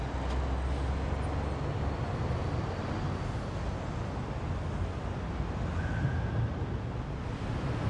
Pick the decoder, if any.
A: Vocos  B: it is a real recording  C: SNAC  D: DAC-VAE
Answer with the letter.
B